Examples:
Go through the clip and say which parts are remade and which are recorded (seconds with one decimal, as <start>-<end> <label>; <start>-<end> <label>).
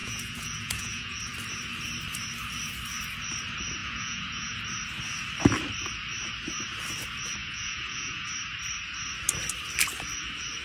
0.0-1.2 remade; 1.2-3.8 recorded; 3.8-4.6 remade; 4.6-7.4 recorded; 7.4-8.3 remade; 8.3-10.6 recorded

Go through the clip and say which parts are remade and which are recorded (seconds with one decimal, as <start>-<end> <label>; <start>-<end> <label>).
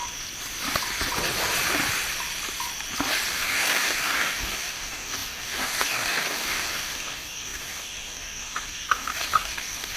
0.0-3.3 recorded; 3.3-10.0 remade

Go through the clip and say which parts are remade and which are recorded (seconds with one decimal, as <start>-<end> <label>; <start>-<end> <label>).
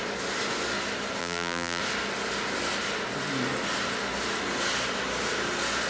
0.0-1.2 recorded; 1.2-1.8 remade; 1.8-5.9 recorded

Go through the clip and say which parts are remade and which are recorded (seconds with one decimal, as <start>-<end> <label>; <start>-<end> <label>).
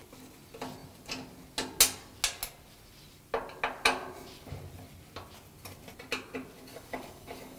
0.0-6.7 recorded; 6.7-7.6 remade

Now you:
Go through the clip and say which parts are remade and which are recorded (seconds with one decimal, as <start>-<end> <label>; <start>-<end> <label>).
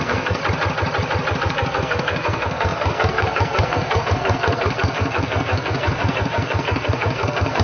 0.0-0.4 remade; 0.4-1.4 recorded; 1.4-7.6 remade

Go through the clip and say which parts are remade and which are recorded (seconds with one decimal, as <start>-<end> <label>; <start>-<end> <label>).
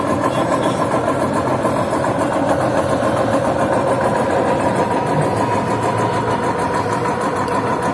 0.0-7.9 recorded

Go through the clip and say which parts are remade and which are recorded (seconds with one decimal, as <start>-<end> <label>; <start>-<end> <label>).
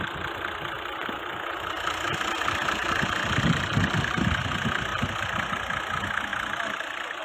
0.0-7.2 recorded